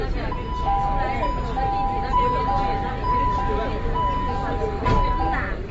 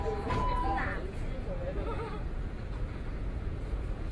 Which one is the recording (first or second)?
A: first